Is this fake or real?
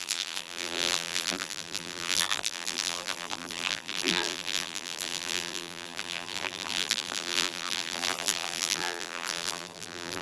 fake